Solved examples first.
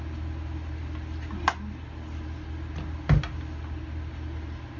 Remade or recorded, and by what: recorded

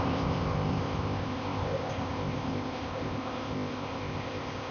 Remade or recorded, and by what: remade, codec, ZipCodec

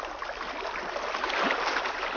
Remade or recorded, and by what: recorded